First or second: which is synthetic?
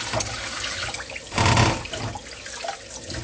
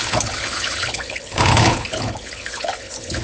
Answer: second